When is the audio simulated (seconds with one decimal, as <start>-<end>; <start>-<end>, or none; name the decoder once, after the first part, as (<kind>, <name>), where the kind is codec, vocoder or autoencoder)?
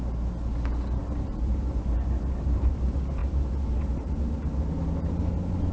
none